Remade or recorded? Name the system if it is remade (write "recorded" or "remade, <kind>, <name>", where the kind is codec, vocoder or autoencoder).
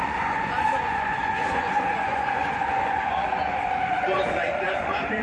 remade, vocoder, Vocos